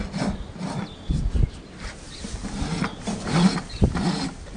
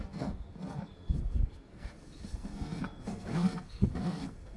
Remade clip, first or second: second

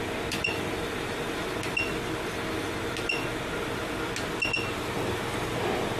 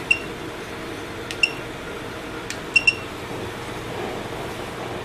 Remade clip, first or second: second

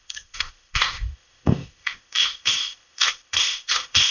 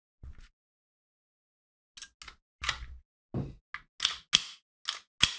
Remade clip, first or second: first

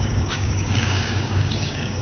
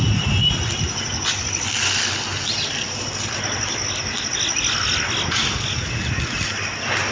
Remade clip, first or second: first